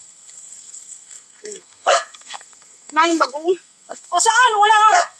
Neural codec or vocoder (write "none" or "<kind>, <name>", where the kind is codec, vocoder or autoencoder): codec, SNAC